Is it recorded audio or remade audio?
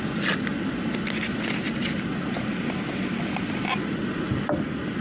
recorded